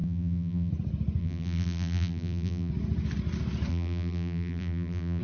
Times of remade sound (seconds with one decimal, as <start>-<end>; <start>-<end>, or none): 0.0-0.7; 1.2-2.7; 3.7-5.2